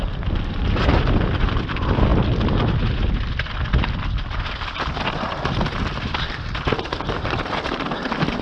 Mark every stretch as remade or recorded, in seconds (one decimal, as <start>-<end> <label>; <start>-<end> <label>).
0.0-8.4 recorded

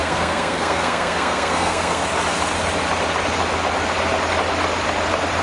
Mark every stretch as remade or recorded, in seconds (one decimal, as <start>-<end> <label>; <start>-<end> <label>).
0.0-2.0 remade; 2.0-5.4 recorded

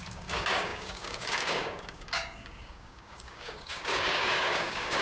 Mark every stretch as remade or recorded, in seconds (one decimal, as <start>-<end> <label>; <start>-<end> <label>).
0.0-5.0 remade

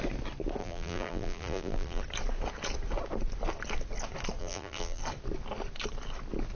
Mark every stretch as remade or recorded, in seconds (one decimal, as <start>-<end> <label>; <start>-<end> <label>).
0.0-0.6 recorded; 0.6-2.0 remade; 2.0-4.4 recorded; 4.4-5.0 remade; 5.0-6.6 recorded